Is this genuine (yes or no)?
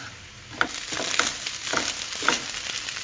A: yes